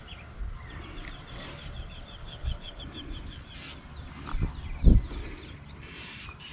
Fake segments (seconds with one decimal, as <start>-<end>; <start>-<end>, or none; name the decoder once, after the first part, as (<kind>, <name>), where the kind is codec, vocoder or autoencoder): 2.2-2.8 (codec, HILCodec)